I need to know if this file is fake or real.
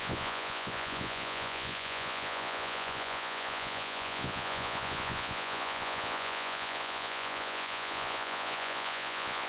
fake